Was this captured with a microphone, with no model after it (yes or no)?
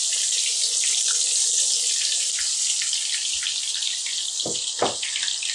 yes